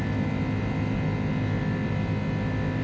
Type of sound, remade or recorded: recorded